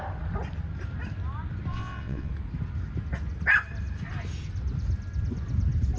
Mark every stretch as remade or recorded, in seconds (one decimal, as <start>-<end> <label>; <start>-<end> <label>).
0.0-1.7 recorded; 1.7-2.3 remade; 2.3-6.0 recorded